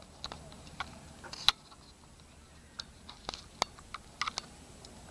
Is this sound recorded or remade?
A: recorded